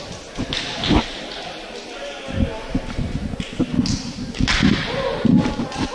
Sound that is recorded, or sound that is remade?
recorded